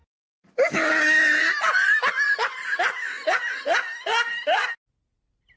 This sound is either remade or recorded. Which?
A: recorded